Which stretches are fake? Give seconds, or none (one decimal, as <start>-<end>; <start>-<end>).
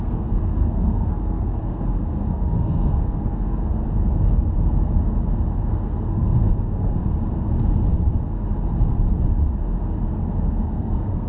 0.0-3.7; 5.7-7.0; 10.3-11.3